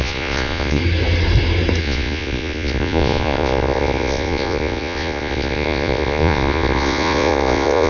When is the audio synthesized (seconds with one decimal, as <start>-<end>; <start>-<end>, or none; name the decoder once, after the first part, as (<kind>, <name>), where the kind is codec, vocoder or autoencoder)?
0.0-0.8 (vocoder, Vocos); 1.8-7.9